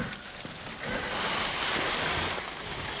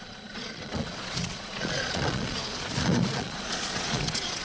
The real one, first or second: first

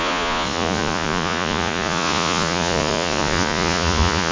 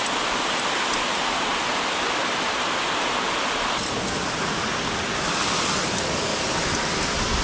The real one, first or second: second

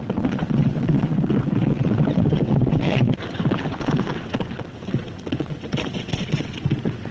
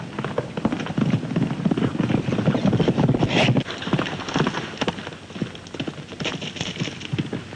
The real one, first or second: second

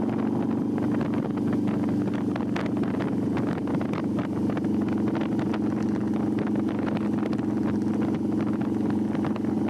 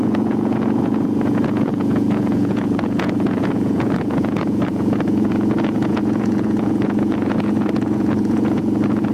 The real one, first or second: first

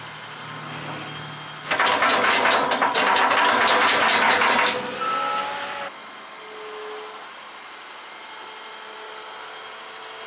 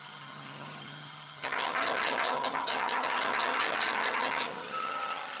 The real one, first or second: first